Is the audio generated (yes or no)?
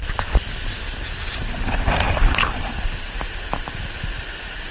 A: no